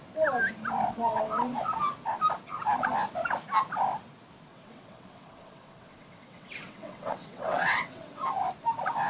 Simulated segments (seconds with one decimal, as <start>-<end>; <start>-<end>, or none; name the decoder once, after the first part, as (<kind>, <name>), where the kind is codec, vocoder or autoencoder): 0.9-1.6 (vocoder, WaveNeXt); 4.5-8.3